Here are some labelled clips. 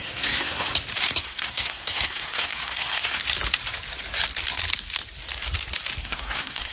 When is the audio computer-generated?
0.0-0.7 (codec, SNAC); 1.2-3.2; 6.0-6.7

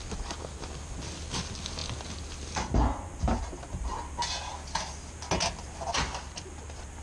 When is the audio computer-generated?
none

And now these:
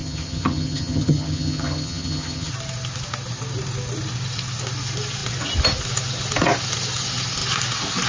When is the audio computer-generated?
0.0-2.5 (vocoder, HiFi-GAN)

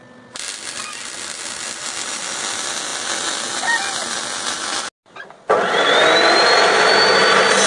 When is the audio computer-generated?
none

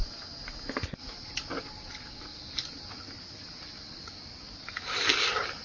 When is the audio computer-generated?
none

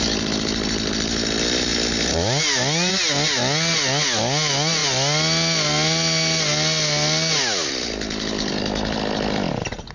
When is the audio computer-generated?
none

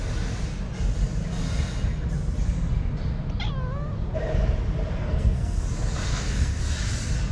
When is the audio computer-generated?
5.0-5.6 (codec, SNAC); 6.1-6.6